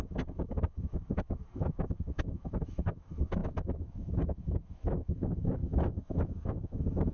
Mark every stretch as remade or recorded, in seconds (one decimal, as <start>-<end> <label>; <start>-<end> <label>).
0.0-7.1 remade